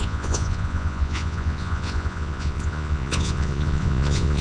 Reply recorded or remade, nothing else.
remade